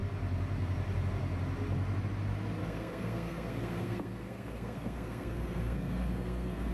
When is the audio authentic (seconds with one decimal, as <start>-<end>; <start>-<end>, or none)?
0.0-2.6